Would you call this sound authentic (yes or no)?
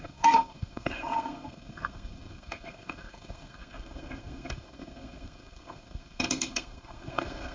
no